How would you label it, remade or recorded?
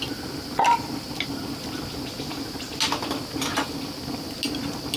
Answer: recorded